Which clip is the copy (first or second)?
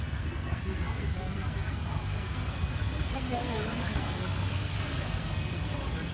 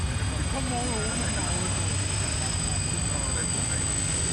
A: first